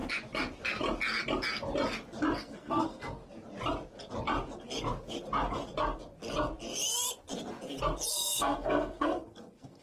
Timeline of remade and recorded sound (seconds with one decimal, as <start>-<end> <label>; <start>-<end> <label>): 0.0-2.4 recorded; 2.4-3.2 remade; 3.2-8.1 recorded; 8.1-9.8 remade